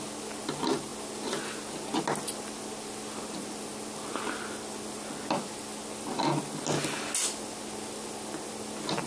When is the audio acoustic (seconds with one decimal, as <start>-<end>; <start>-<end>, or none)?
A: 0.0-9.1